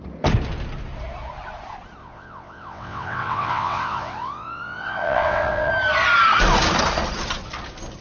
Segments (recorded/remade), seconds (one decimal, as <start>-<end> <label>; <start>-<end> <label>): 0.0-2.0 recorded; 2.0-5.7 remade; 5.7-8.0 recorded